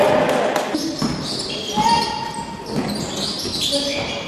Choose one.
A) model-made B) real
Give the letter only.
B